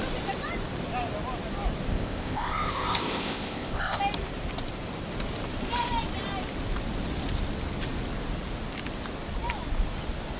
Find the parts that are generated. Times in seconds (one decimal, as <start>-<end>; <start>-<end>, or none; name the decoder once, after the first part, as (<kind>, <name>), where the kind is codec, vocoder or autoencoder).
1.9-4.0 (codec, ZipCodec)